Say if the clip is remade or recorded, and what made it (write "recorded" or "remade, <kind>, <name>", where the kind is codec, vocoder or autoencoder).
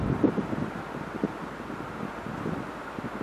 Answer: recorded